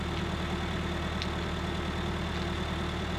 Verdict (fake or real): real